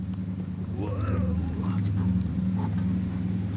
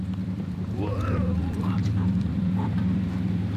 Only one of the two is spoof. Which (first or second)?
second